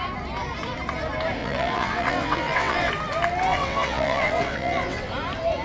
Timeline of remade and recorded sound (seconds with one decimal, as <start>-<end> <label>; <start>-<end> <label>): 0.0-1.4 recorded; 1.4-2.9 remade; 2.9-3.5 recorded; 3.5-5.1 remade; 5.1-5.6 recorded